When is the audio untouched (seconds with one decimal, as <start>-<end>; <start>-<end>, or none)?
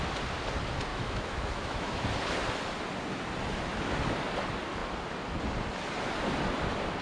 0.0-0.9; 2.1-7.0